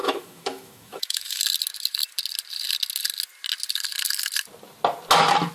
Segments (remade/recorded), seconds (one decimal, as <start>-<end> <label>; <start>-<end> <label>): 0.0-1.4 remade; 1.4-5.5 recorded